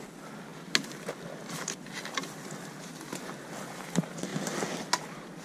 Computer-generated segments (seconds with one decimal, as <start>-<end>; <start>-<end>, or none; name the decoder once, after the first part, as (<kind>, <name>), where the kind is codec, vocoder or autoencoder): none